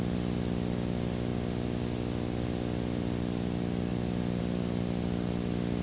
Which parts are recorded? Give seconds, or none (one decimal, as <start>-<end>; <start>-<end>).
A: 0.0-5.8